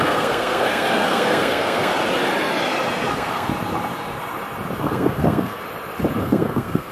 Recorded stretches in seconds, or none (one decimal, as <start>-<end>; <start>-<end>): 1.9-3.1; 3.5-4.8; 5.6-6.2